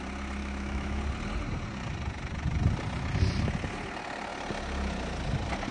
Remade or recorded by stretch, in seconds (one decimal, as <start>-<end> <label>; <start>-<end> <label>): 0.0-0.4 recorded; 0.4-1.0 remade; 1.0-5.7 recorded